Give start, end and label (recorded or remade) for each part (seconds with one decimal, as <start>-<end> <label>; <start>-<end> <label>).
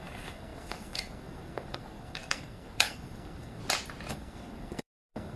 0.0-3.6 remade; 3.6-4.1 recorded; 4.1-5.4 remade